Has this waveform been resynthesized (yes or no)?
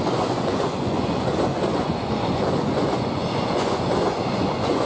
yes